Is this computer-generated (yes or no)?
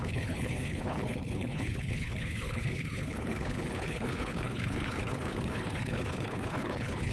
yes